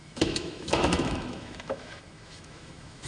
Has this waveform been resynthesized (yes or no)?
yes